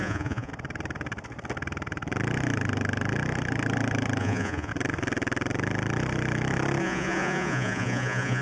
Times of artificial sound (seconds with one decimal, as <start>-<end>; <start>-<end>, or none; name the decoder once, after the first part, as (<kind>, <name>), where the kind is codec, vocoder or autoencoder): 0.0-0.5 (vocoder, Vocos); 4.2-4.7; 6.8-8.4